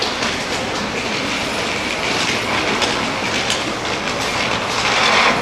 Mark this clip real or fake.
real